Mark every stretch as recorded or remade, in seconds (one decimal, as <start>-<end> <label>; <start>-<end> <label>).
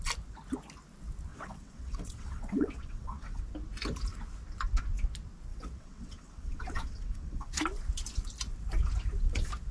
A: 0.0-1.3 recorded; 1.3-3.4 remade; 3.4-5.5 recorded; 5.5-7.6 remade; 7.6-9.7 recorded